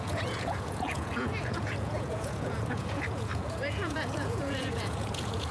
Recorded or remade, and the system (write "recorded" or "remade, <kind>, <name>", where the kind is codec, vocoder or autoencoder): remade, vocoder, Vocos